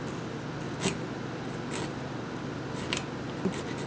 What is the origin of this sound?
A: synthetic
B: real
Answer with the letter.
B